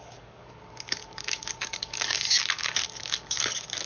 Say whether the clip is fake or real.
fake